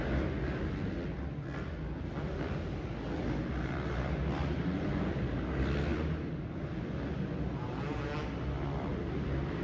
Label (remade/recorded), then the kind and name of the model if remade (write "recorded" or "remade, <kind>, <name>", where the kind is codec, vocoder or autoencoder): recorded